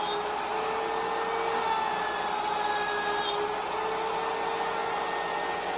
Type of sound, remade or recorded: recorded